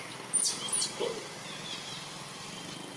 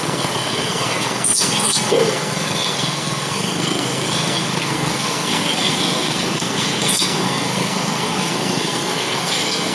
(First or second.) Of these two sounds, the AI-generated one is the second